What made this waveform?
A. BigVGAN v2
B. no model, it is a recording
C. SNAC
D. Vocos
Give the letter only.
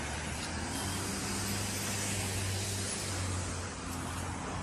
B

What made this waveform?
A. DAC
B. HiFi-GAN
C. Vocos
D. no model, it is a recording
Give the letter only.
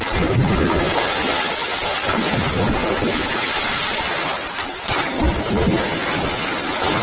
D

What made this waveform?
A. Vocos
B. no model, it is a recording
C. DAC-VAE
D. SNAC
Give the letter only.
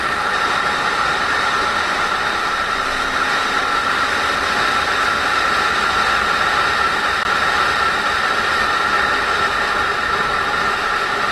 B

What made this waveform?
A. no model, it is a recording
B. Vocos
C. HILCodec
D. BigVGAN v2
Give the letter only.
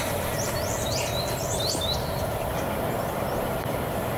D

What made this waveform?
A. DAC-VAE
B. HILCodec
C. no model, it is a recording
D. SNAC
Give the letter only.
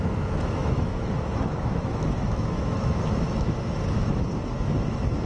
A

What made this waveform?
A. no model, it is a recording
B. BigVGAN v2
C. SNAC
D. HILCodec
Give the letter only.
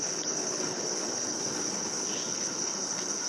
D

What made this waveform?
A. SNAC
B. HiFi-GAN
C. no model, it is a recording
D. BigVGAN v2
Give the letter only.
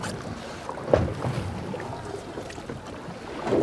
C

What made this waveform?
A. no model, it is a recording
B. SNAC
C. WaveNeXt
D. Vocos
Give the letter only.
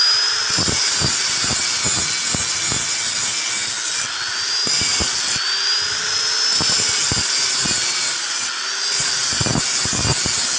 A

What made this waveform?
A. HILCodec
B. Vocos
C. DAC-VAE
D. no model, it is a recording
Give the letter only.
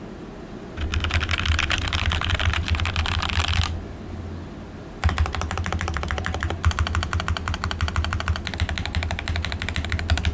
D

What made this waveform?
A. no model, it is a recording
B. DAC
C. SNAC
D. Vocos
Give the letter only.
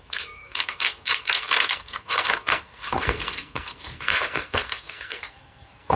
C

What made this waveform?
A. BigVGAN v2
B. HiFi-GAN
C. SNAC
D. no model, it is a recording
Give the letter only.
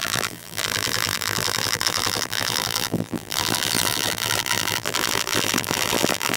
A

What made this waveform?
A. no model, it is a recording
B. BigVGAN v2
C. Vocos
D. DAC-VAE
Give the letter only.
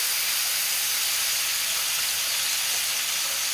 A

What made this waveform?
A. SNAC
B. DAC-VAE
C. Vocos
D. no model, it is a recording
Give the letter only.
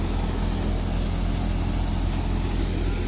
D